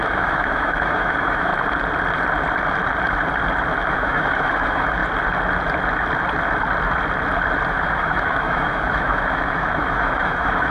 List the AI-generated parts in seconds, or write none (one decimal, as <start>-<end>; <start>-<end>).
0.0-1.5; 3.9-5.0; 7.7-10.7